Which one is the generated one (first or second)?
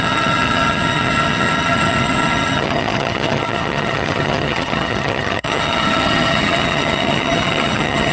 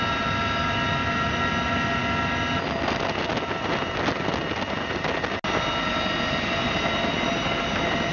first